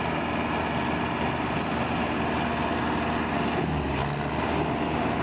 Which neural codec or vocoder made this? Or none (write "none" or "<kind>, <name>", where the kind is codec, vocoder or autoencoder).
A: none